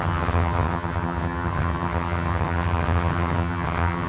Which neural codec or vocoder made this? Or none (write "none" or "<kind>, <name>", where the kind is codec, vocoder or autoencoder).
vocoder, HiFi-GAN